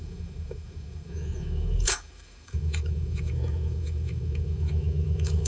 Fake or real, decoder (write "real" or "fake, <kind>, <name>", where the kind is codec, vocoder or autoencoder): fake, autoencoder, DAC-VAE